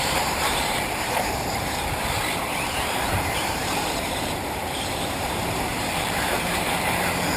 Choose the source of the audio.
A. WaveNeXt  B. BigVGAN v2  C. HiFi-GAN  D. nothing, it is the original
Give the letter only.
B